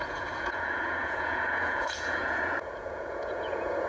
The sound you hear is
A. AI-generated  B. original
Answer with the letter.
A